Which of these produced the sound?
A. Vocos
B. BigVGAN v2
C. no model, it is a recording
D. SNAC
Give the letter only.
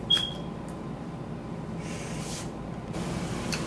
C